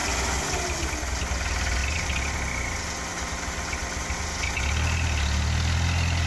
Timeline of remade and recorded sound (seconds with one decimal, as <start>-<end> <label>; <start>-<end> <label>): 0.0-6.3 recorded